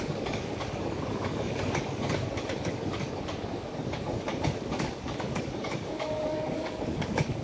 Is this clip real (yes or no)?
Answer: no